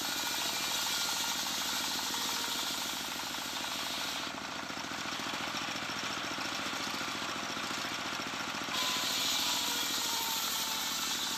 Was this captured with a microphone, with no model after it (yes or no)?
yes